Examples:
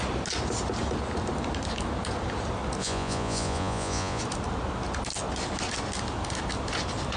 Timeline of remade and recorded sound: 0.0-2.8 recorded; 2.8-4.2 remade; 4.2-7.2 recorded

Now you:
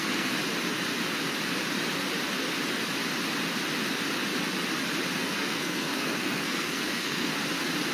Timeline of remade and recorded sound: 0.0-0.4 remade; 0.4-5.1 recorded; 5.1-7.3 remade; 7.3-7.9 recorded

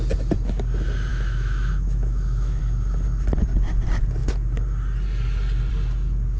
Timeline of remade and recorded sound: 0.0-1.1 recorded; 1.1-2.6 remade; 2.6-6.4 recorded

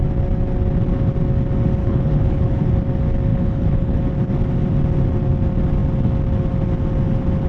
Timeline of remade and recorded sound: 0.0-1.8 recorded; 1.8-2.7 remade; 2.7-3.3 recorded; 3.3-4.0 remade; 4.0-7.5 recorded

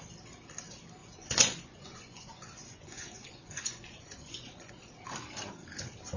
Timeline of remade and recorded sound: 0.0-1.0 recorded; 1.0-4.7 remade; 4.7-6.2 recorded

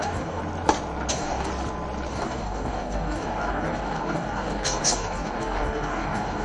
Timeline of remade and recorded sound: 0.0-0.4 remade; 0.4-1.1 recorded; 1.1-1.5 remade; 1.5-2.1 recorded; 2.1-6.4 remade

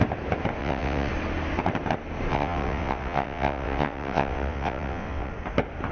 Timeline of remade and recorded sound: 0.0-0.6 recorded; 0.6-1.1 remade; 1.1-2.3 recorded; 2.3-5.3 remade; 5.3-5.9 recorded